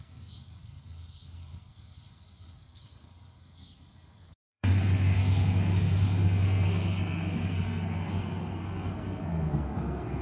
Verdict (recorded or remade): remade